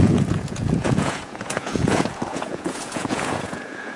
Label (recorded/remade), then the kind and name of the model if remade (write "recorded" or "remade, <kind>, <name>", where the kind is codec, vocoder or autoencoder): remade, vocoder, Vocos